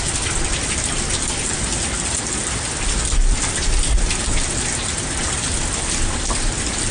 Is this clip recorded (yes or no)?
yes